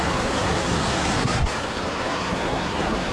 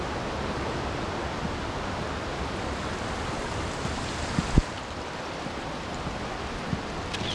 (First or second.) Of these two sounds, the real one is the second